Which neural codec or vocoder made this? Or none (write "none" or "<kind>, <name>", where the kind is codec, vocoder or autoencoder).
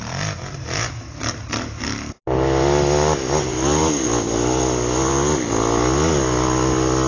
none